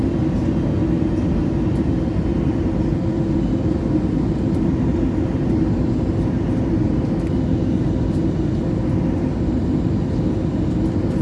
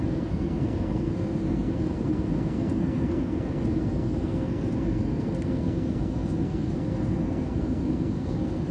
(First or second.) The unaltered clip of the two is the first